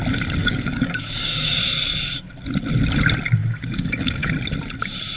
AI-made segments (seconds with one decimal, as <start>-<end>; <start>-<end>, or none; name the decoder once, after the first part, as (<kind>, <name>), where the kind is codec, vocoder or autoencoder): 0.4-1.6 (codec, DAC); 3.4-4.3